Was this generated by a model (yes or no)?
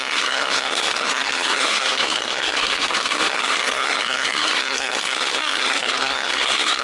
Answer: yes